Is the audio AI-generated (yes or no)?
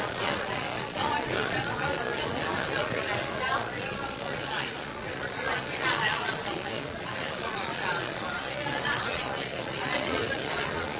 yes